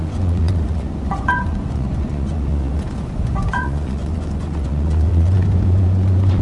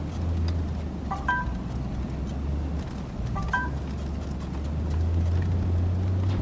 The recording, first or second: second